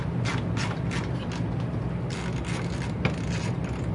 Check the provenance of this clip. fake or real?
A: real